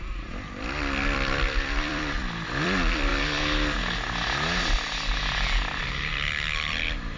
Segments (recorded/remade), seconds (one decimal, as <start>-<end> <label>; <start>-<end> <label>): 0.0-3.1 remade; 3.1-5.8 recorded; 5.8-7.2 remade